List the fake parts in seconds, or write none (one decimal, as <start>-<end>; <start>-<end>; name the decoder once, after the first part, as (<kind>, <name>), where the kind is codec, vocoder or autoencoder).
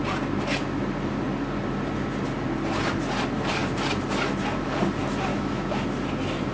5.3-5.8 (autoencoder, DAC-VAE)